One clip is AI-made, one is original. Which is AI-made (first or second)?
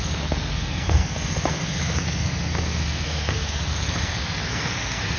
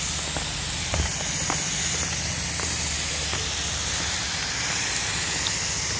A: first